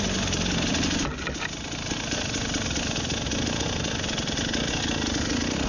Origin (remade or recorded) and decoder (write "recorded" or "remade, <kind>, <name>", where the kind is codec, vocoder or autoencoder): recorded